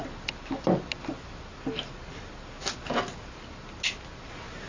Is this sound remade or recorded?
recorded